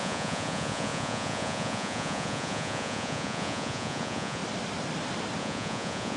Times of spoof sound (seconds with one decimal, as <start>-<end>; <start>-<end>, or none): 0.0-4.4; 5.4-6.2